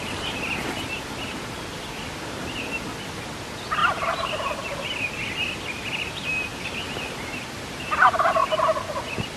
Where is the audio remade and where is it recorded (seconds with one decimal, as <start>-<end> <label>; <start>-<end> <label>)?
0.0-3.8 recorded; 3.8-5.0 remade; 5.0-6.5 recorded; 6.5-7.1 remade; 7.1-9.4 recorded